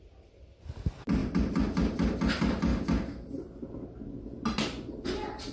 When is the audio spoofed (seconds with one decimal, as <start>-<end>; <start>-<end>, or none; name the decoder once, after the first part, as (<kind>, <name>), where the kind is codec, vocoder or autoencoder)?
none